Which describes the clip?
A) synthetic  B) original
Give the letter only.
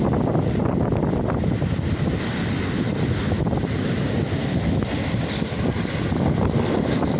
B